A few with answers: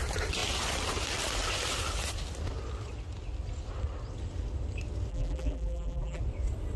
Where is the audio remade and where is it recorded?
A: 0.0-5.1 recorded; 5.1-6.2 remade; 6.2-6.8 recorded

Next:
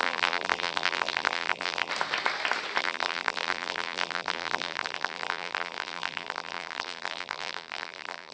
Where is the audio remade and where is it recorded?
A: 0.0-1.9 remade; 1.9-2.8 recorded; 2.8-8.3 remade

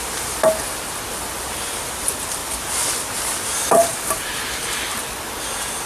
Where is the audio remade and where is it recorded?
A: 0.0-3.9 recorded; 3.9-4.9 remade; 4.9-5.9 recorded

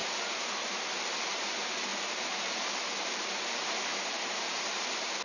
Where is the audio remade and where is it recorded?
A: 0.0-0.7 remade; 0.7-1.9 recorded; 1.9-5.2 remade

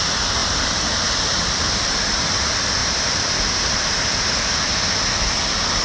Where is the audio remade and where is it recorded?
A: 0.0-0.4 recorded; 0.4-2.2 remade; 2.2-2.8 recorded; 2.8-4.7 remade; 4.7-5.8 recorded